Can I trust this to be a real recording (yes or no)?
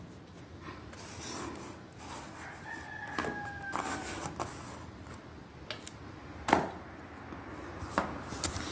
yes